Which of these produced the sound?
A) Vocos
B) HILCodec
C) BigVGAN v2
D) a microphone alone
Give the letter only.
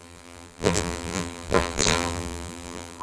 C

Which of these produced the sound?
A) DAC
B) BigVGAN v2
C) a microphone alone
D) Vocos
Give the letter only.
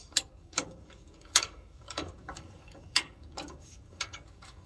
A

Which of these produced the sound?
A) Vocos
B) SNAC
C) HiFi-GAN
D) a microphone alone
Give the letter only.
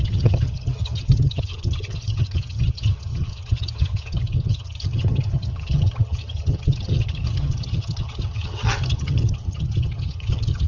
C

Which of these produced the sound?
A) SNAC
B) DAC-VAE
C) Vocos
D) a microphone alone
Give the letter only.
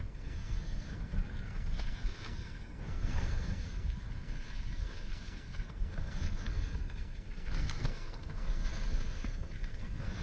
A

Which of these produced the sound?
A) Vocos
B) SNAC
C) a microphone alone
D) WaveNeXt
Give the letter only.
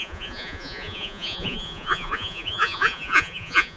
A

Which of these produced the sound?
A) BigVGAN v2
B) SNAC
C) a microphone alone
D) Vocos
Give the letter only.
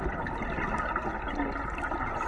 C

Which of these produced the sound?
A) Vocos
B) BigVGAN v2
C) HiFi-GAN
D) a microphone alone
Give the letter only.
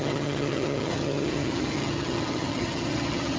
C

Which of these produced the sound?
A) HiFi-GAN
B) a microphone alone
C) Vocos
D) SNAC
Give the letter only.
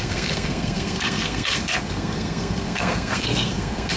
D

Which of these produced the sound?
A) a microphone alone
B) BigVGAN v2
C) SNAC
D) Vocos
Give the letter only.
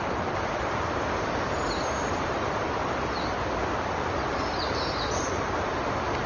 A